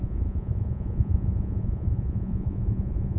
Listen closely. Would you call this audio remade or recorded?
remade